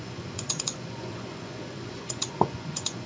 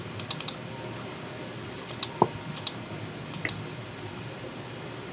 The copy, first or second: first